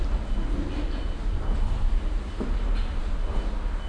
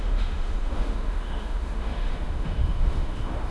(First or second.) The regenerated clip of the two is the second